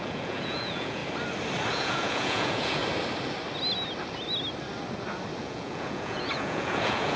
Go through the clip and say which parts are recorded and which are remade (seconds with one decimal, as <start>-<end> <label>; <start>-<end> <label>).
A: 0.0-1.0 remade; 1.0-1.7 recorded; 1.7-2.8 remade; 2.8-5.4 recorded; 5.4-7.2 remade

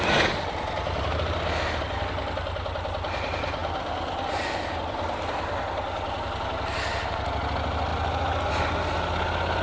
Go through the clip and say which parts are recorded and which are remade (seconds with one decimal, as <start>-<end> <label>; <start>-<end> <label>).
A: 0.0-9.6 recorded

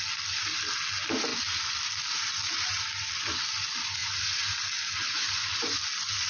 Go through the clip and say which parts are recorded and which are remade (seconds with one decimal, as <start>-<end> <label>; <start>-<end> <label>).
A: 0.0-6.3 recorded

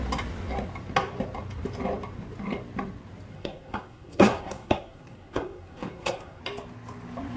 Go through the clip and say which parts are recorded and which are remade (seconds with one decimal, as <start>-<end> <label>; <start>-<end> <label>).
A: 0.0-3.3 recorded; 3.3-6.4 remade; 6.4-7.4 recorded

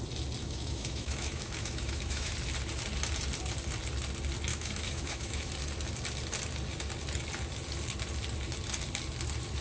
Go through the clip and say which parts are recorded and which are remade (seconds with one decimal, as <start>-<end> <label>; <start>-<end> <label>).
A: 0.0-0.4 recorded; 0.4-2.3 remade; 2.3-4.5 recorded; 4.5-5.5 remade; 5.5-9.6 recorded

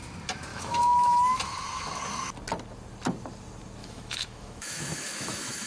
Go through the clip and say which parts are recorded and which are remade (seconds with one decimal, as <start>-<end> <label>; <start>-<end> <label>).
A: 0.0-0.5 recorded; 0.5-1.4 remade; 1.4-3.8 recorded; 3.8-5.7 remade